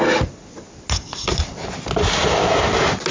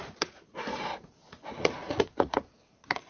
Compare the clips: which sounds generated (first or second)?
second